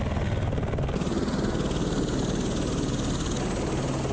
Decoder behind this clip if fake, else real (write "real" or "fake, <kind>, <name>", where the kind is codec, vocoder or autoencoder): real